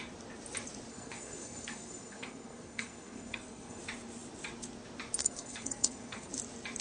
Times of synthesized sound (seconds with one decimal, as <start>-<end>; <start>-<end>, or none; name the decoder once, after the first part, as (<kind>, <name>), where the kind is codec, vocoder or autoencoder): 0.9-3.8 (codec, SNAC); 5.2-6.3